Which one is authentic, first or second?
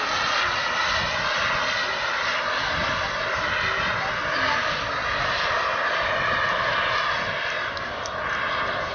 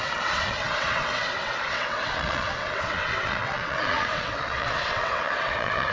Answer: first